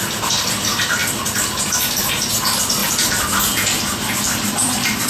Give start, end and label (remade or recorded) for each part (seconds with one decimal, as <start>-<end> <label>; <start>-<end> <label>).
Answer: 0.0-2.8 recorded; 2.8-5.1 remade